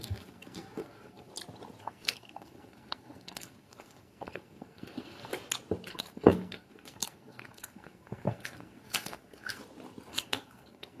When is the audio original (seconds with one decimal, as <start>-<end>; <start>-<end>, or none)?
1.3-1.8; 5.3-5.9; 9.6-10.1